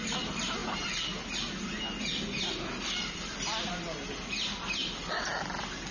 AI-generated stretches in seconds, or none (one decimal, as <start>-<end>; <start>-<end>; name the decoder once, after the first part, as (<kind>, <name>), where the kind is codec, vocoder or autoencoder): none